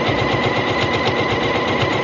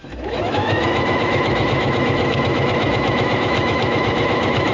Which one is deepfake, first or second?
second